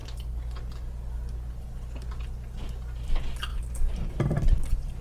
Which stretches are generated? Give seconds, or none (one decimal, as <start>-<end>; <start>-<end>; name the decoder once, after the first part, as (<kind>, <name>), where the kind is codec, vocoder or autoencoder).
3.5-5.0 (vocoder, BigVGAN v2)

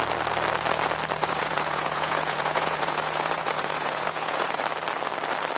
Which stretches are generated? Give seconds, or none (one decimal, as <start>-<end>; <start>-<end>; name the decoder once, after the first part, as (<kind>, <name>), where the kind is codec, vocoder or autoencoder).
1.2-4.6 (vocoder, Vocos)

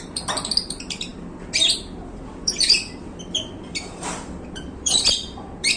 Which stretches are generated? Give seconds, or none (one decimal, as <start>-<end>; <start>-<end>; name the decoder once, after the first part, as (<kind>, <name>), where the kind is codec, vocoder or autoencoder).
0.0-5.8 (vocoder, BigVGAN v2)

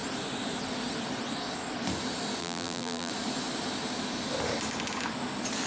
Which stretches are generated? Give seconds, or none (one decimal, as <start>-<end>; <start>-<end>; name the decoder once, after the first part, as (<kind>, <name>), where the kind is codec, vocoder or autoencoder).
2.4-3.1 (vocoder, BigVGAN v2)

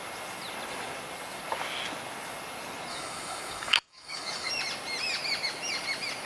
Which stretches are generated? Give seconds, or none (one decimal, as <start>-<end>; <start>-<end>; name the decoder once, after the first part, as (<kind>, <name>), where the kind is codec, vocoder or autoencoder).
2.9-4.5 (codec, DAC)

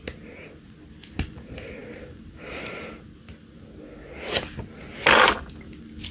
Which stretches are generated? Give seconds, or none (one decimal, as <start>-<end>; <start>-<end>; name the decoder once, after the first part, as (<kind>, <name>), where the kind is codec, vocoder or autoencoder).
none